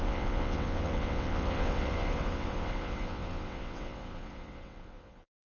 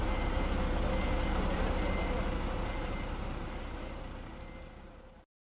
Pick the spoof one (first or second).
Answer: first